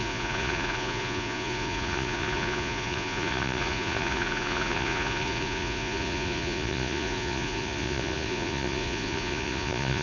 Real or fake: fake